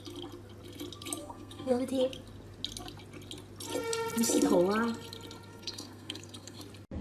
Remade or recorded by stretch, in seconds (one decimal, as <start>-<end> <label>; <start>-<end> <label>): 0.0-1.2 recorded; 1.2-1.8 remade; 1.8-5.5 recorded; 5.5-6.6 remade; 6.6-7.0 recorded